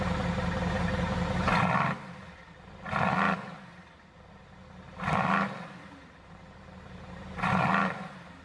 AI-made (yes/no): no